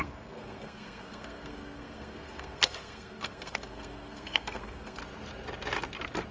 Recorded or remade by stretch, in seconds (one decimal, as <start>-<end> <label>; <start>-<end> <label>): 0.0-5.0 remade; 5.0-6.3 recorded